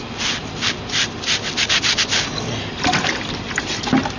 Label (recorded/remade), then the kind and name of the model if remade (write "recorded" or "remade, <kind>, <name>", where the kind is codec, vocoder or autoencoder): recorded